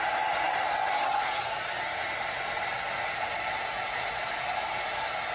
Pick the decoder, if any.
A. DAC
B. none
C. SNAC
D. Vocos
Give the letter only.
B